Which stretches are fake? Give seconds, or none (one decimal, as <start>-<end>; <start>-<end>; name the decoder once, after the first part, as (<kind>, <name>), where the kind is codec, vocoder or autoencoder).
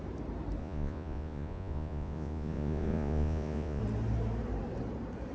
0.6-3.8 (vocoder, Vocos)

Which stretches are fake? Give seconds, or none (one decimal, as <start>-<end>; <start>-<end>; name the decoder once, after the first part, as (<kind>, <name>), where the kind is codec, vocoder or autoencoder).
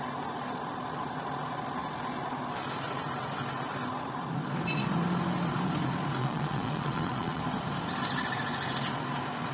6.2-7.4 (vocoder, Vocos)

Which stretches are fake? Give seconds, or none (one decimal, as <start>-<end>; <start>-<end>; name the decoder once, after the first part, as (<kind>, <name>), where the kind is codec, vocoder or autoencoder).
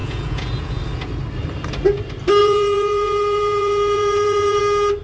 0.0-0.8 (vocoder, Vocos); 2.4-4.6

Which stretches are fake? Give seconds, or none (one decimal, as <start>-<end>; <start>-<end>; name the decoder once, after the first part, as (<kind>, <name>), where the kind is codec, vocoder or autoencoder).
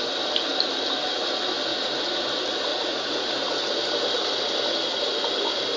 1.7-2.2 (vocoder, Vocos); 2.7-3.3